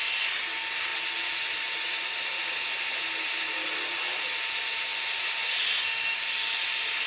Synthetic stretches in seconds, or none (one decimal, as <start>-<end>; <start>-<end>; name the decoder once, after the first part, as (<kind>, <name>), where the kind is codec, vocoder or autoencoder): none